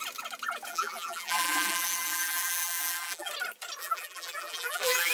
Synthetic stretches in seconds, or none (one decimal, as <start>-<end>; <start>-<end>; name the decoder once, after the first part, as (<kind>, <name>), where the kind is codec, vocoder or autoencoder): 0.7-3.3 (vocoder, BigVGAN v2); 3.8-5.1